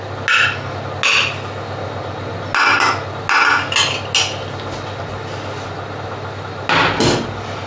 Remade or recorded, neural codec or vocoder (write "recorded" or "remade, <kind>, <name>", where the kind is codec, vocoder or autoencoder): recorded